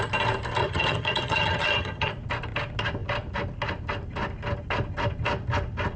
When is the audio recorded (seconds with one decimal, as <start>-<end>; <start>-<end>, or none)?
0.0-0.6; 2.1-6.0